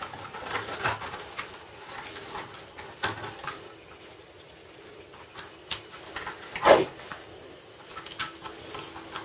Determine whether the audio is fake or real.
real